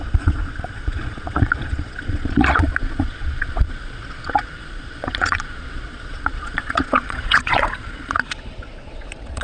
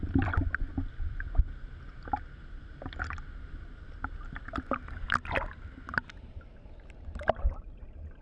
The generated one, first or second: first